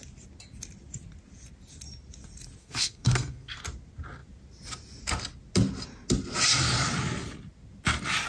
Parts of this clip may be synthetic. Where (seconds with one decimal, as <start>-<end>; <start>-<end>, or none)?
2.6-3.6